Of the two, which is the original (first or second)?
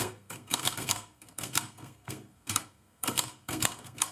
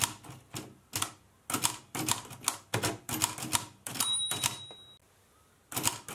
second